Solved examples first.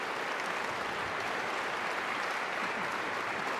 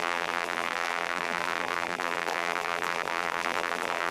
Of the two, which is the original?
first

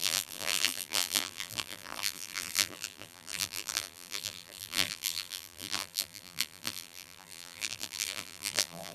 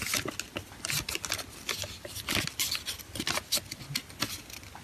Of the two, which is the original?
second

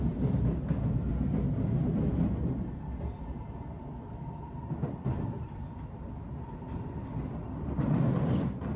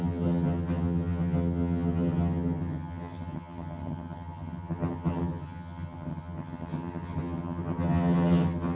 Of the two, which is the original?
first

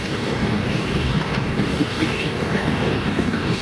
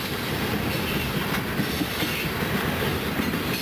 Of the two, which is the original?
second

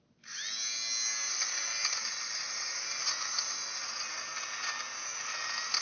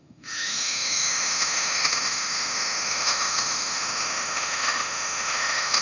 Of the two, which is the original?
first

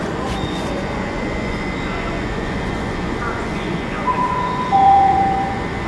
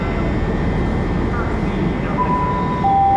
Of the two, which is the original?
second